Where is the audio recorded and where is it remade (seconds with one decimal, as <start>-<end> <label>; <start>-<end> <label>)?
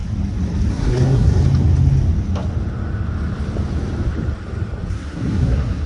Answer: 0.0-0.7 recorded; 0.7-1.4 remade; 1.4-4.9 recorded; 4.9-5.9 remade